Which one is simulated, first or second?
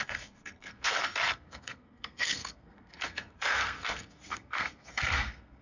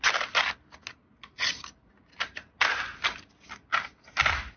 first